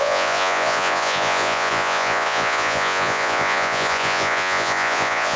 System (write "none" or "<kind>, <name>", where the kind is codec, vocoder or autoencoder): vocoder, Vocos